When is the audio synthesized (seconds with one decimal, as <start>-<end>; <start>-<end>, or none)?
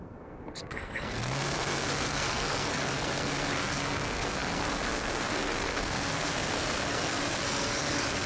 0.0-8.3